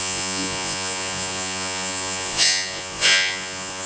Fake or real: fake